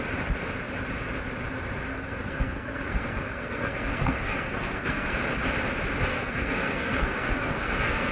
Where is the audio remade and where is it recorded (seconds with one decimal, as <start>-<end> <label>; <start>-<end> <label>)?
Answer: 0.0-1.9 recorded; 1.9-5.2 remade; 5.2-6.1 recorded; 6.1-8.1 remade